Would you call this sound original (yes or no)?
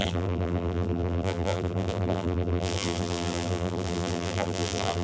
no